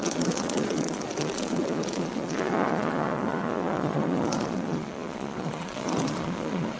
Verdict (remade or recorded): remade